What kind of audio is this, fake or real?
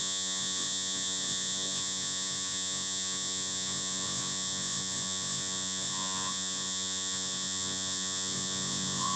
fake